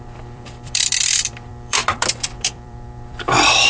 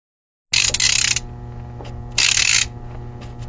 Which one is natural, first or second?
second